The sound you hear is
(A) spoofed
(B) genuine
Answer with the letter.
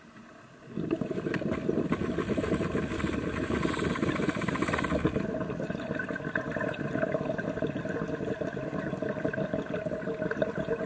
B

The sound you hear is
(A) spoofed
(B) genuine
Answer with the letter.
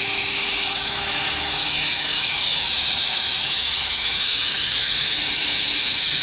A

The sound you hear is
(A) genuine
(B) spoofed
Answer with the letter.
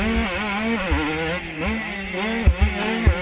A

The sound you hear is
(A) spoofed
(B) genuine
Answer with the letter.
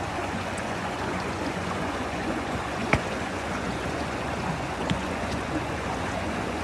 A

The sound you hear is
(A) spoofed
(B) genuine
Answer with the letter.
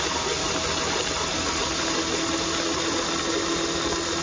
B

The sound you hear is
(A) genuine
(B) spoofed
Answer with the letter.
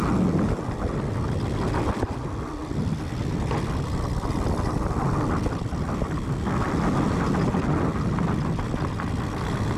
A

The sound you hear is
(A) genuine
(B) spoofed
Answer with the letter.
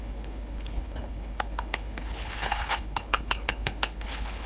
B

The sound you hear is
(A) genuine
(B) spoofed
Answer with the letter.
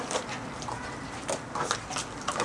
A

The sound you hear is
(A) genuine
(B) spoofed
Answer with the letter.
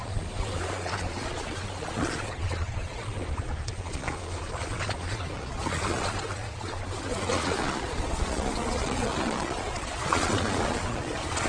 B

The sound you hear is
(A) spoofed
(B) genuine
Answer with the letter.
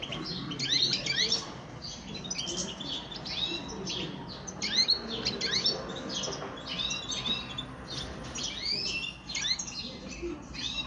B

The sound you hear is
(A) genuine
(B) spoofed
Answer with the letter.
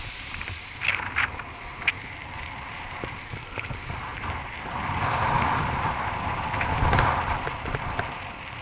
B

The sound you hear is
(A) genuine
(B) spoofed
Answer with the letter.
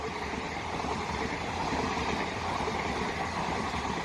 A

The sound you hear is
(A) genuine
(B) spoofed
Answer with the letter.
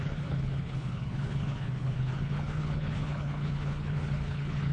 B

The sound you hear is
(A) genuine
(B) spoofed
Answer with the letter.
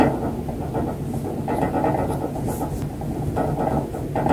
A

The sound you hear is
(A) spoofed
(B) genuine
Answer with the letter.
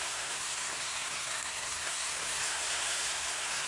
A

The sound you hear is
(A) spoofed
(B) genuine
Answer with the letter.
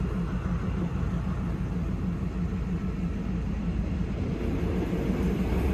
B